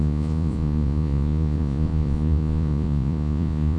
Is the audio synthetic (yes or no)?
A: yes